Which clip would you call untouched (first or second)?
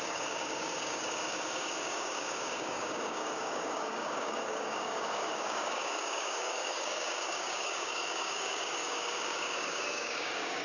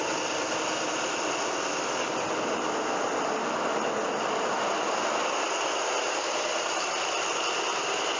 second